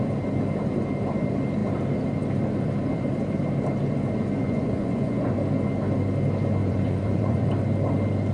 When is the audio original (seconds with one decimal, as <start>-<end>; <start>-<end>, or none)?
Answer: 0.0-4.4; 5.3-6.6; 7.5-8.3